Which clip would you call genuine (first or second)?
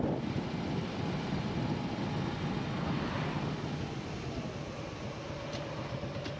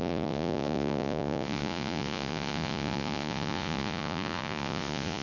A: first